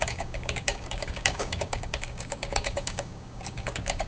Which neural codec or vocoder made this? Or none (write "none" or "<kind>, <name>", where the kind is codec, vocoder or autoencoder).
codec, DAC